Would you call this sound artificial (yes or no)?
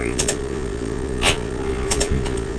yes